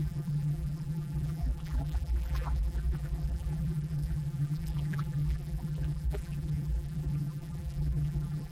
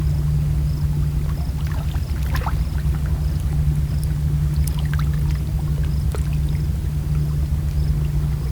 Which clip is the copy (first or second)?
first